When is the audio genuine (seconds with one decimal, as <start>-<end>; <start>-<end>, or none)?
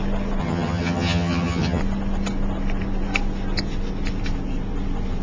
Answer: 0.0-0.4; 1.8-5.2